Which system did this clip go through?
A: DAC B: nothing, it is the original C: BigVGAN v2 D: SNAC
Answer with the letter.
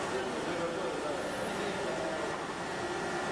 B